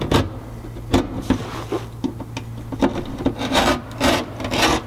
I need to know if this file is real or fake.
real